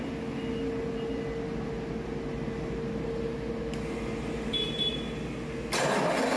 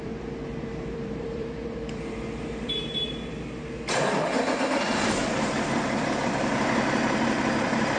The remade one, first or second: second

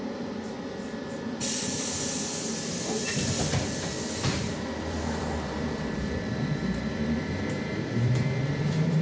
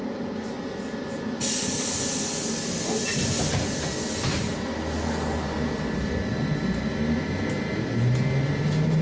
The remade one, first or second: first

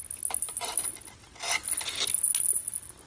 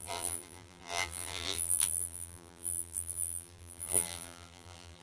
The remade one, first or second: second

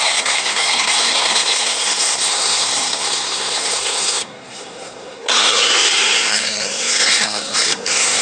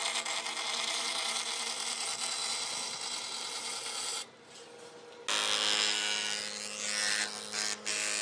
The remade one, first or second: first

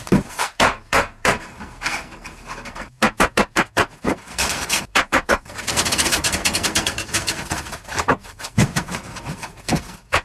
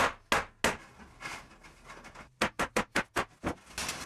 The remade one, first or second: first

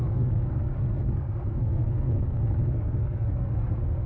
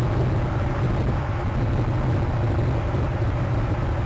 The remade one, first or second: first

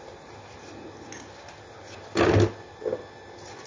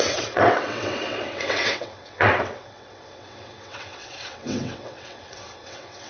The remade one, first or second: second